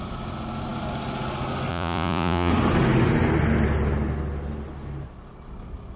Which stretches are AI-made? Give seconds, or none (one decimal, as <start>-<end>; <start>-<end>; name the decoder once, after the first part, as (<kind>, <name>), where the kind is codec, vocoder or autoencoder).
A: 1.7-2.5 (vocoder, Vocos)